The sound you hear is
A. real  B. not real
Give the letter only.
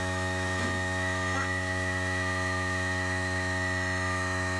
B